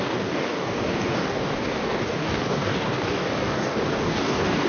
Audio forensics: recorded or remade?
remade